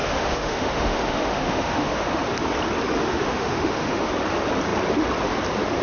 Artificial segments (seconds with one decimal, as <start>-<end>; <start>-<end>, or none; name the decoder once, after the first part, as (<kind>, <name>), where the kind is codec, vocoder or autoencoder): 0.0-2.2 (autoencoder, DAC-VAE); 3.0-4.1